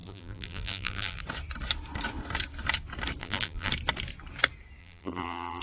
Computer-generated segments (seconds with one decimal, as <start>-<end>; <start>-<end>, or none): 0.0-1.2; 3.2-3.7; 4.8-5.6